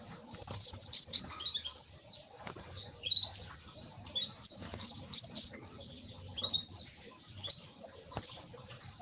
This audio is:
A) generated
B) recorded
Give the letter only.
A